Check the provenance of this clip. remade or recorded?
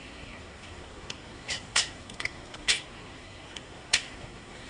remade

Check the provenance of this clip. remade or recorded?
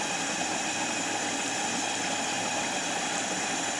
recorded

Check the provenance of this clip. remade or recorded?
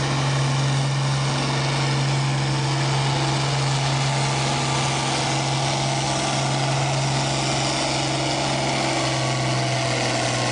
recorded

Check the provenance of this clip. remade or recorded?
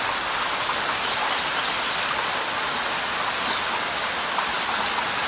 recorded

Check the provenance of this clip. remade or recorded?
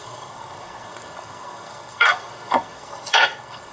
remade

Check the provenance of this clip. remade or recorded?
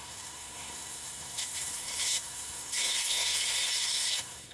remade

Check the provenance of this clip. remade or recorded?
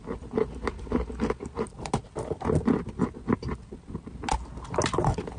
recorded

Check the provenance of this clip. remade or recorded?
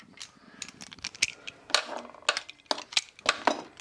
recorded